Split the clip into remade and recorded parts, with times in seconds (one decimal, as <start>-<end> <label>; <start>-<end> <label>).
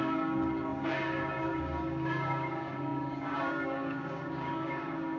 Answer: 0.0-5.2 remade